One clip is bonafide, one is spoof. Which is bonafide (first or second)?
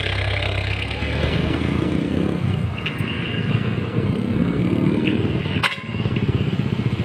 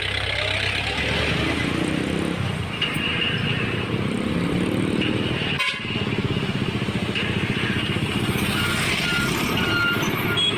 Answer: second